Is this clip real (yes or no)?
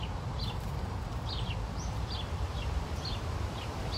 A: no